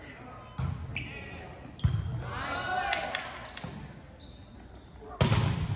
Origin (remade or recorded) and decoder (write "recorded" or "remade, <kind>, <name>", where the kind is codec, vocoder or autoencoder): recorded